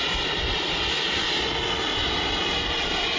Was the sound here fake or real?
real